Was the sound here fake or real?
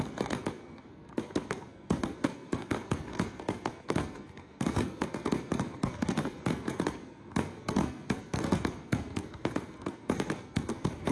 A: fake